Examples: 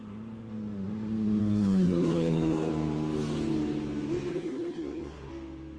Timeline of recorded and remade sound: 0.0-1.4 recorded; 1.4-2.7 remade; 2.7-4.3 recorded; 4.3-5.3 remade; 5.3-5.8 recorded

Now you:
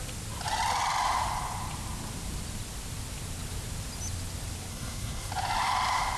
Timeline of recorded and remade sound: 0.0-4.7 recorded; 4.7-5.3 remade; 5.3-6.2 recorded

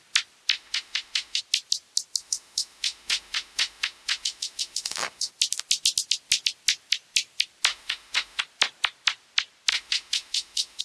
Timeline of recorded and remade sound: 0.0-0.5 recorded; 0.5-1.4 remade; 1.4-2.2 recorded; 2.2-5.3 remade; 5.3-7.7 recorded; 7.7-8.4 remade; 8.4-9.7 recorded; 9.7-10.8 remade

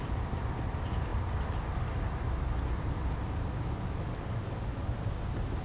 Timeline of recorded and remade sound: 0.0-5.6 recorded

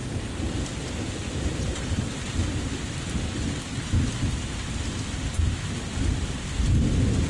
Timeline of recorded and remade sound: 0.0-7.3 recorded

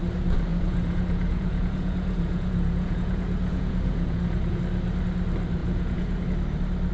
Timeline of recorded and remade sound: 0.0-0.5 recorded; 0.5-4.6 remade; 4.6-5.6 recorded; 5.6-6.2 remade; 6.2-6.9 recorded